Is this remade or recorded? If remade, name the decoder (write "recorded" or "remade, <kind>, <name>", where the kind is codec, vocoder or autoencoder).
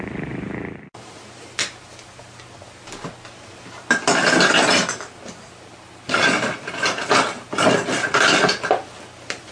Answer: recorded